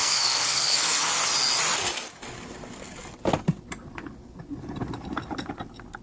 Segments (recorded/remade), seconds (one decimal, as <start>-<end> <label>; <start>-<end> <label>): 0.0-1.1 remade; 1.1-6.0 recorded